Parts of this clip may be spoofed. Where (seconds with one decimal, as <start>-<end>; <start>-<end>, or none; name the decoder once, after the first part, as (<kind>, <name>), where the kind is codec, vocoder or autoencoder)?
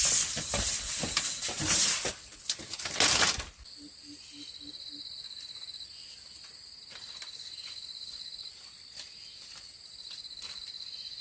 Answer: none